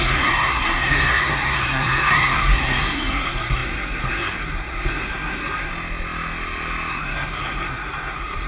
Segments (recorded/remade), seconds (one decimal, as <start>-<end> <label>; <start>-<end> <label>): 0.0-5.7 remade; 5.7-6.9 recorded; 6.9-8.5 remade